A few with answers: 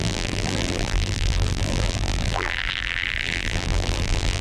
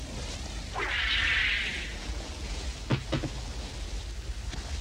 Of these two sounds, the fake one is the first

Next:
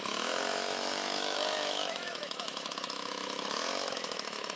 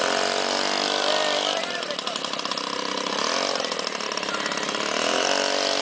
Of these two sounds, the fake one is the first